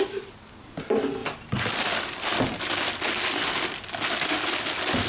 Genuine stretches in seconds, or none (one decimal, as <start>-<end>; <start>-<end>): 0.0-5.1

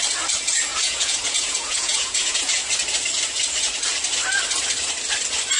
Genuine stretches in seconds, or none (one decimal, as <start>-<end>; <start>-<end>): 0.0-0.7; 2.6-5.6

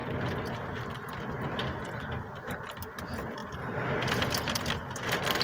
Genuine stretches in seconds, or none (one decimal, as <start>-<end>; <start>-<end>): 0.0-5.4

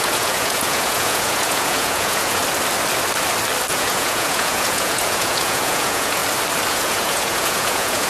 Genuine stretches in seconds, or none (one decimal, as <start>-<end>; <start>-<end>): 2.4-3.7; 6.2-6.7